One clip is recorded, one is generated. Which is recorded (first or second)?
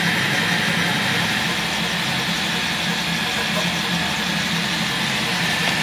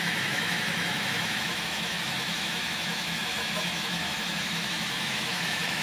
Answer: first